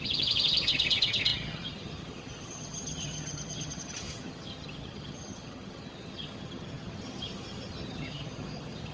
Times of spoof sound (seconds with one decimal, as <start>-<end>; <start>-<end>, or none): 0.0-8.9